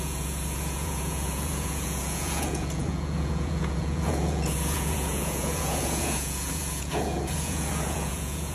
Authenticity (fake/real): fake